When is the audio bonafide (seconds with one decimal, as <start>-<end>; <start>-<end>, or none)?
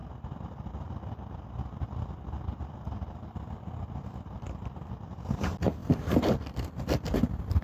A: 0.0-7.6